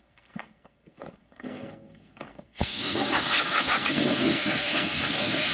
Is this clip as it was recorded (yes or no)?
no